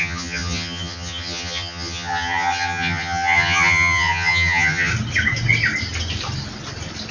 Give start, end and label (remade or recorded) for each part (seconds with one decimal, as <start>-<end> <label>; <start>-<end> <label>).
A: 0.0-4.9 remade; 4.9-7.1 recorded